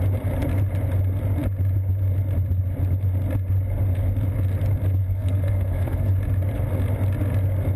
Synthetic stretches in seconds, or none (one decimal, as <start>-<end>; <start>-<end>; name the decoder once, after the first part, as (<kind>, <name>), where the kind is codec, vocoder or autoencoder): 5.0-6.1 (codec, SNAC)